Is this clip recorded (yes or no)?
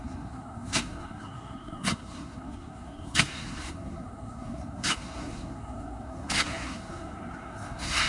no